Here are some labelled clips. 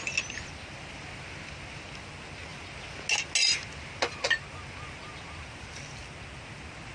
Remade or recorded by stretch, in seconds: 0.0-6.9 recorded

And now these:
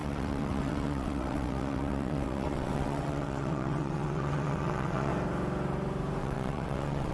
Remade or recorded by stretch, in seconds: 0.0-5.1 remade; 5.1-6.2 recorded; 6.2-7.1 remade

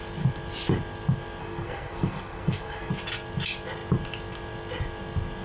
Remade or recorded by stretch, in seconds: 0.0-1.4 recorded; 1.4-2.9 remade; 2.9-5.4 recorded

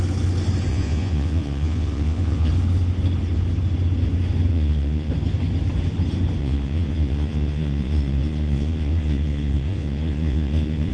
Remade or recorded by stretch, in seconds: 0.0-0.7 recorded; 0.7-2.5 remade; 2.5-4.5 recorded; 4.5-5.1 remade; 5.1-6.4 recorded; 6.4-10.9 remade

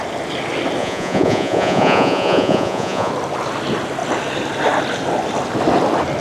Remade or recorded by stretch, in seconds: 0.0-0.8 recorded; 0.8-3.1 remade; 3.1-6.2 recorded

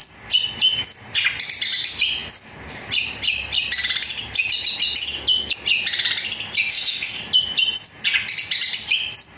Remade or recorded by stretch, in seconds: 0.0-6.7 recorded; 6.7-7.2 remade; 7.2-9.4 recorded

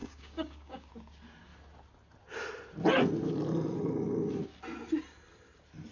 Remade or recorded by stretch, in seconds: 0.0-0.9 remade; 0.9-5.9 recorded